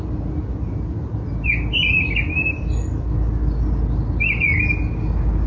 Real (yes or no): yes